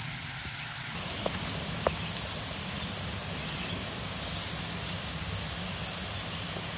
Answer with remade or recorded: recorded